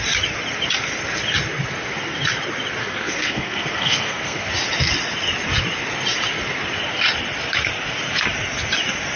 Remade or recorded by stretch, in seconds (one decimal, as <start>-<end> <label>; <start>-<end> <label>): 0.0-2.8 recorded; 2.8-4.5 remade; 4.5-9.2 recorded